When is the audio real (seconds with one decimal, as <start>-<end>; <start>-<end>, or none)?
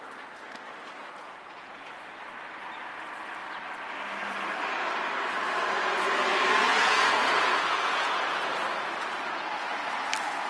0.0-1.0; 1.9-6.7; 8.4-10.5